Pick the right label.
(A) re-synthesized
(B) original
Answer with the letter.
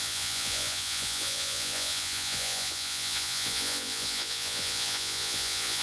A